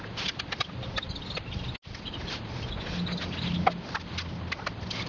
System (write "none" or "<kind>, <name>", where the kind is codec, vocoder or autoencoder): none